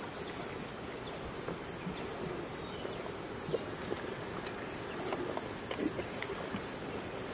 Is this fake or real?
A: real